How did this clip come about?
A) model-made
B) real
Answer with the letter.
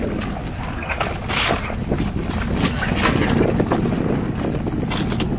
B